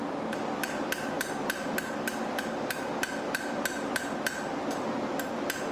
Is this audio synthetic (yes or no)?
no